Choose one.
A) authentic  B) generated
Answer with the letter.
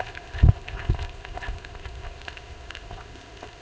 B